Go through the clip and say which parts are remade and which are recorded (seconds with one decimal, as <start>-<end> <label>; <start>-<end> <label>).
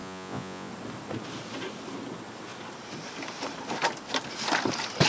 0.0-0.7 remade; 0.7-5.1 recorded